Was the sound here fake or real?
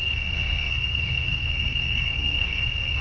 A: fake